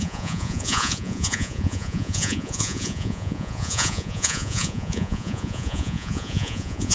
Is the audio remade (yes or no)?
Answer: yes